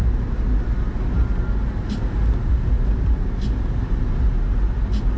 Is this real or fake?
real